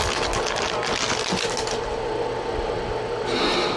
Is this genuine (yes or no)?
yes